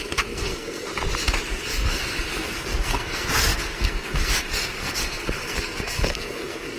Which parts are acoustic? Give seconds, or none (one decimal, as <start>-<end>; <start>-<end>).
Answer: 0.9-1.5